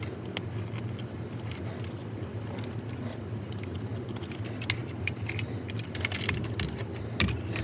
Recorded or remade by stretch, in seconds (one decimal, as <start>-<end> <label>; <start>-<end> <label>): 0.0-7.6 recorded